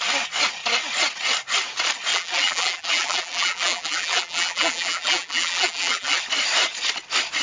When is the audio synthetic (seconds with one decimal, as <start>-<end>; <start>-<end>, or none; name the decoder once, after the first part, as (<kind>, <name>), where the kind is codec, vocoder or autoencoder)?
2.1-6.2 (vocoder, BigVGAN v2)

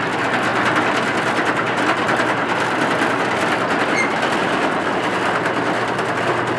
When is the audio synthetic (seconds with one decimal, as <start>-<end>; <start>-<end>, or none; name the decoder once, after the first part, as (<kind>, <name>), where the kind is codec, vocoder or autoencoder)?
0.5-3.2 (vocoder, BigVGAN v2); 4.4-6.6

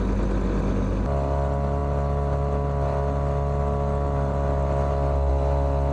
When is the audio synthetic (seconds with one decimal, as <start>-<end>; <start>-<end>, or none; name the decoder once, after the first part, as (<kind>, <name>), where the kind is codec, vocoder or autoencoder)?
none

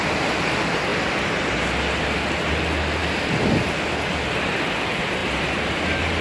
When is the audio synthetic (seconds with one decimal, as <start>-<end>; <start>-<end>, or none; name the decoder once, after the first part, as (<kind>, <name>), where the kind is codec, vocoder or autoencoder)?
none

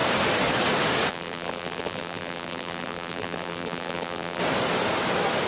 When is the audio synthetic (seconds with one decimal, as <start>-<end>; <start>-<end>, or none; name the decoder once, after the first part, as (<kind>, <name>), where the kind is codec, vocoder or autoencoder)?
1.1-4.4 (vocoder, BigVGAN v2)

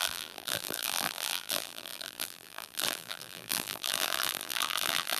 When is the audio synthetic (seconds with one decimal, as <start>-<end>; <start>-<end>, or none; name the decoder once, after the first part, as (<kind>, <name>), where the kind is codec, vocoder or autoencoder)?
0.0-5.2 (vocoder, BigVGAN v2)

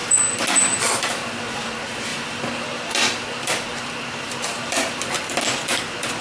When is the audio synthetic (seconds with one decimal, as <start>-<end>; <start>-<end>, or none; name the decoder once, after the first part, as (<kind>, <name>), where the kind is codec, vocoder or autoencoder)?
0.0-0.8 (vocoder, BigVGAN v2); 2.1-5.8

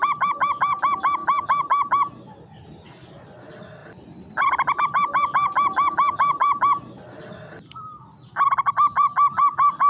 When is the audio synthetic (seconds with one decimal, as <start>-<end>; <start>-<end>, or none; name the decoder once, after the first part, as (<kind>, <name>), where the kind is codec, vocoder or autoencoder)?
0.0-1.2 (vocoder, BigVGAN v2); 3.2-3.8; 4.8-9.9